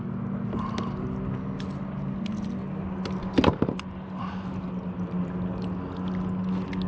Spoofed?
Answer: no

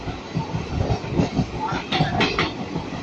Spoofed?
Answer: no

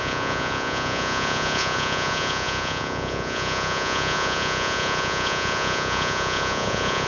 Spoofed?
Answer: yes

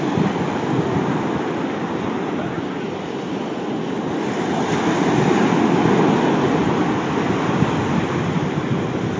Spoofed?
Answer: no